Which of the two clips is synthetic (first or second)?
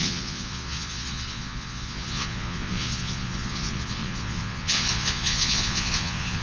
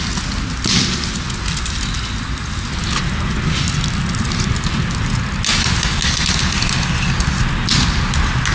first